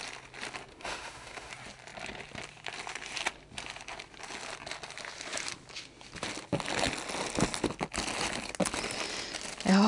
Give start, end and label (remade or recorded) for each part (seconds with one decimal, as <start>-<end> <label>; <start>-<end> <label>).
0.0-0.7 recorded; 0.7-1.5 remade; 1.5-9.9 recorded

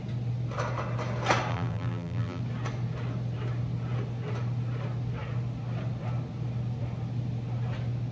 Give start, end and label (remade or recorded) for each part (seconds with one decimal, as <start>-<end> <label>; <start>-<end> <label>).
0.0-1.5 recorded; 1.5-2.4 remade; 2.4-8.1 recorded

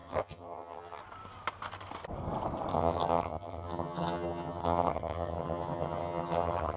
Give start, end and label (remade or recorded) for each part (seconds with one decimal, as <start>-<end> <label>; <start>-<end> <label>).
0.0-1.0 remade; 1.0-2.7 recorded; 2.7-6.8 remade

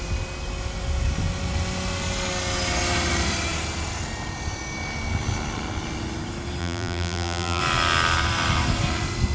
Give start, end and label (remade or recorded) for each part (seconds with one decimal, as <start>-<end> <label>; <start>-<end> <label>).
0.0-6.6 recorded; 6.6-7.6 remade; 7.6-9.3 recorded